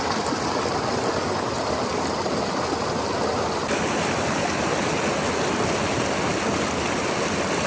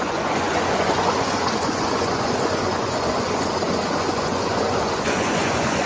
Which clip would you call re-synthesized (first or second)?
second